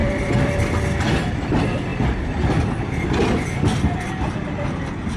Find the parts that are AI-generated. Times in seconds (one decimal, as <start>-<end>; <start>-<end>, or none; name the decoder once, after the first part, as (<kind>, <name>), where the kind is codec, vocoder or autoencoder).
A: 0.0-0.8 (vocoder, BigVGAN v2)